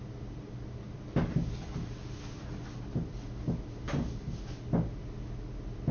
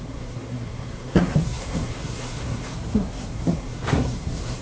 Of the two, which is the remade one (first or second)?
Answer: second